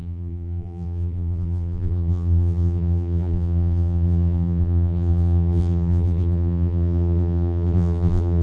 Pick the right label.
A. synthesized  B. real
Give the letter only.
A